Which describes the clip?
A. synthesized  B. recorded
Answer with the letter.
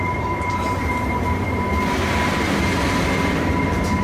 A